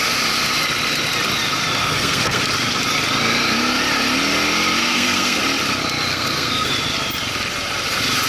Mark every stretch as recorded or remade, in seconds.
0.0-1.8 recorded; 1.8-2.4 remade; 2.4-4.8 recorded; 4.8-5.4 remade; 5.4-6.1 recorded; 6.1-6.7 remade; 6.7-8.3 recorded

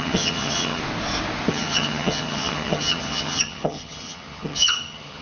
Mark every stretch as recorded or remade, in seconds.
0.0-0.8 remade; 0.8-1.5 recorded; 1.5-5.2 remade